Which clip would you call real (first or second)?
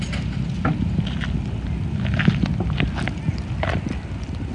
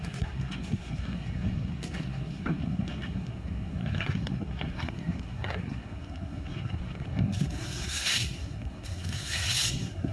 first